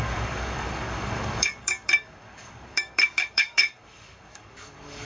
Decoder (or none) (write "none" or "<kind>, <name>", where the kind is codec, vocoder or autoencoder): codec, DAC